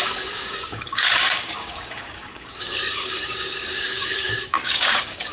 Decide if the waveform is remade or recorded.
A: remade